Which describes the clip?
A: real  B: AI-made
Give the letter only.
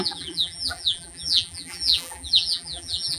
B